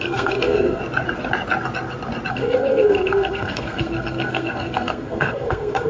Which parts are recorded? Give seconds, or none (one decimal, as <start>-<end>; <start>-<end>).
0.8-2.3